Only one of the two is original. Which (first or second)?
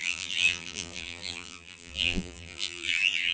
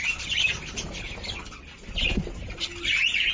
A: second